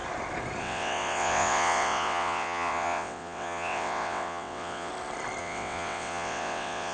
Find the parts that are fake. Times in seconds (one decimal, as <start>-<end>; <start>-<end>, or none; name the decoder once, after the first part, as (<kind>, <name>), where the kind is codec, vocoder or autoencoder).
0.6-4.9 (vocoder, WaveNeXt); 5.4-6.9